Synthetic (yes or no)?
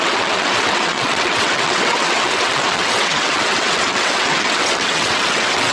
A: yes